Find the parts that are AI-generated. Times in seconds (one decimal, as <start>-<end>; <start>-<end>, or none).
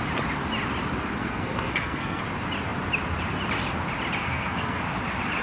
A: 1.2-2.2; 4.2-4.8